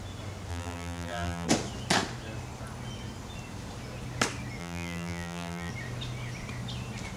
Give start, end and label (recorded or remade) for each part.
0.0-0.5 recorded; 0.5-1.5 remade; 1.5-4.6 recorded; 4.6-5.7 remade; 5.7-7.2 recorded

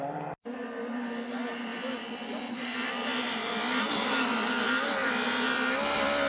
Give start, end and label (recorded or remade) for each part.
0.0-6.3 remade

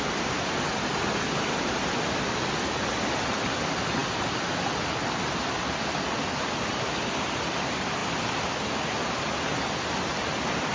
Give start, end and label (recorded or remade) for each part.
0.0-10.7 recorded

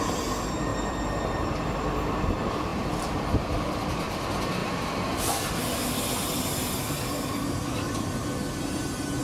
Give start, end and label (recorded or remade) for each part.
0.0-0.7 recorded; 0.7-1.2 remade; 1.2-4.6 recorded; 4.6-5.6 remade; 5.6-9.2 recorded

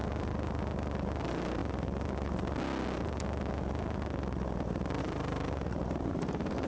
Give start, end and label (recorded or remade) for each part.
0.0-1.2 recorded; 1.2-1.6 remade; 1.6-5.0 recorded; 5.0-6.7 remade